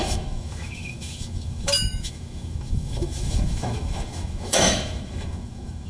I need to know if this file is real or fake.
fake